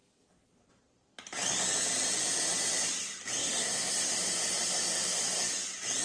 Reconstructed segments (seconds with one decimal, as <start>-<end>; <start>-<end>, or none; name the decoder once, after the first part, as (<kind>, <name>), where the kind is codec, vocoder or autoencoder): 3.4-4.1 (codec, SNAC)